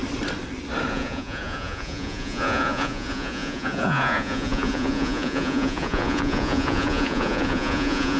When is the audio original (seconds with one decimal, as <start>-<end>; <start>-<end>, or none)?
0.0-0.9